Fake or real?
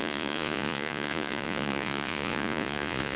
fake